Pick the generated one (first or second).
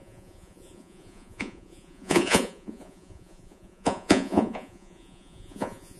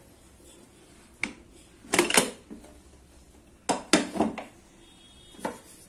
first